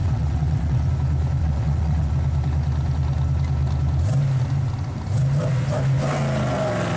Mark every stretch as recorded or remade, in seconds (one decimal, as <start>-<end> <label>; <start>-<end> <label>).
0.0-0.9 remade; 0.9-1.4 recorded; 1.4-2.1 remade; 2.1-7.0 recorded